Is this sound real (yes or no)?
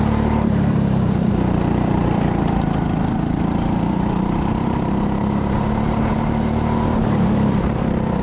no